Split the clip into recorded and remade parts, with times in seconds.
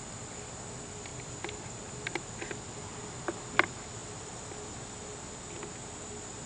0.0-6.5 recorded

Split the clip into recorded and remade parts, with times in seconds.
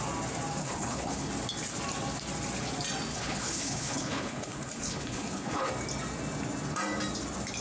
0.0-0.6 recorded; 0.6-1.3 remade; 1.3-3.1 recorded; 3.1-5.7 remade; 5.7-7.6 recorded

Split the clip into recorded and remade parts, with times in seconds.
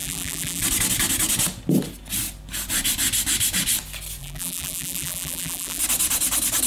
0.0-0.6 remade; 0.6-4.2 recorded; 4.2-5.8 remade; 5.8-6.7 recorded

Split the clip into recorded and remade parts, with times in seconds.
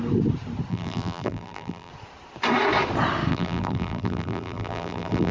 0.0-0.7 recorded; 0.7-1.9 remade; 1.9-3.3 recorded; 3.3-5.3 remade